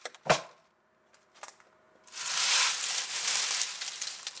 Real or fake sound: real